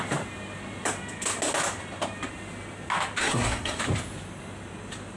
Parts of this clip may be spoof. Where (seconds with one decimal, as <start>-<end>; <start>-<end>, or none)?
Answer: 3.2-3.8